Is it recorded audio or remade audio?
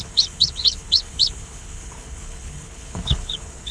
remade